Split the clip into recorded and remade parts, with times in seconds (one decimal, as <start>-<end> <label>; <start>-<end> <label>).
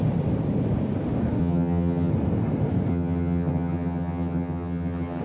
0.0-1.4 recorded; 1.4-2.1 remade; 2.1-2.9 recorded; 2.9-5.2 remade